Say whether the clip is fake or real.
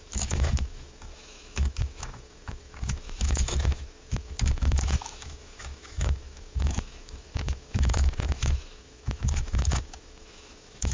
fake